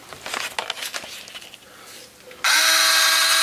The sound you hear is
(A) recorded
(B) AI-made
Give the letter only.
A